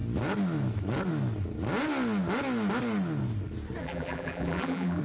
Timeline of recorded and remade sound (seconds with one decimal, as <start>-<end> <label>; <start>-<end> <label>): 0.0-3.8 recorded; 3.8-5.0 remade